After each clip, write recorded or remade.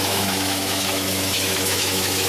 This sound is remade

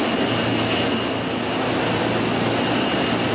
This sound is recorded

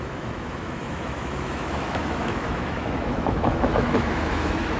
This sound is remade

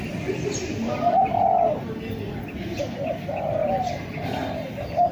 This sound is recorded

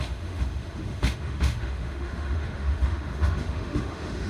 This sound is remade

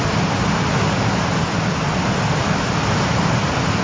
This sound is recorded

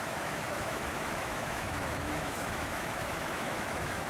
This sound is remade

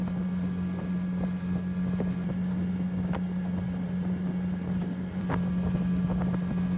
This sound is recorded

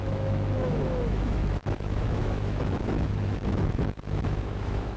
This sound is remade